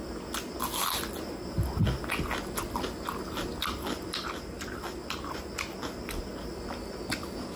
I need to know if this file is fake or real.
real